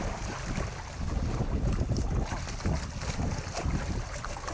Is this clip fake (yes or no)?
no